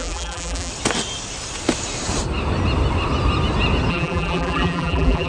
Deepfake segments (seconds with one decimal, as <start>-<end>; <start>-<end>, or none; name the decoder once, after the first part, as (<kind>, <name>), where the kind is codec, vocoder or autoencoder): 0.0-0.7 (vocoder, BigVGAN v2); 3.9-5.3